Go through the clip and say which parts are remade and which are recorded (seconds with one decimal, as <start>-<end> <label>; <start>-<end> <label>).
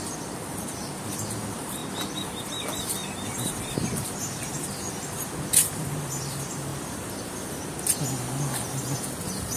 0.0-1.8 remade; 1.8-2.4 recorded; 2.4-6.7 remade; 6.7-9.1 recorded; 9.1-9.6 remade